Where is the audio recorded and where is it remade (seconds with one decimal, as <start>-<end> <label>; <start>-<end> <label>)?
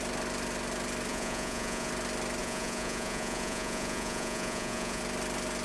0.0-1.1 recorded; 1.1-1.9 remade; 1.9-2.4 recorded; 2.4-5.0 remade; 5.0-5.6 recorded